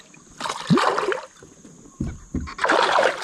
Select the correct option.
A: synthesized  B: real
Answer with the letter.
B